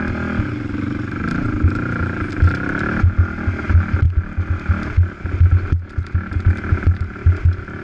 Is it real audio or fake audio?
real